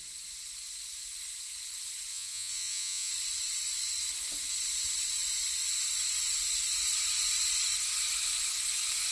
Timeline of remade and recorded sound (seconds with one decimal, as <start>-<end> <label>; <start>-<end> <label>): 0.0-2.1 recorded; 2.1-3.1 remade; 3.1-9.1 recorded